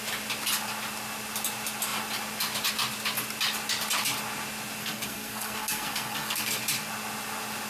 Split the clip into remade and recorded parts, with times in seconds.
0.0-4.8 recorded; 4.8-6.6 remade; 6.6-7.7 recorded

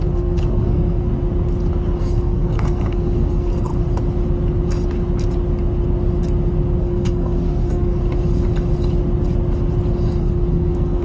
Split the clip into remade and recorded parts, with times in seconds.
0.0-1.1 remade; 1.1-2.0 recorded; 2.0-3.7 remade; 3.7-6.8 recorded; 6.8-8.0 remade; 8.0-10.2 recorded; 10.2-11.0 remade

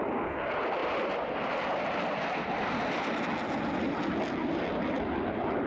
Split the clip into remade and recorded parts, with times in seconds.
0.0-5.7 recorded